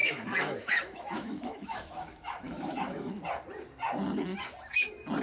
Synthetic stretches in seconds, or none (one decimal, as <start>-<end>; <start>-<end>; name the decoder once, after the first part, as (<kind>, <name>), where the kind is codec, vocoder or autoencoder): 0.0-3.1 (autoencoder, DAC-VAE)